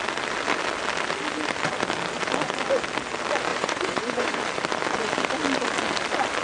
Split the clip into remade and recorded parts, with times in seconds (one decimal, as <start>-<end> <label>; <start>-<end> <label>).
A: 0.0-3.5 recorded; 3.5-4.4 remade; 4.4-6.4 recorded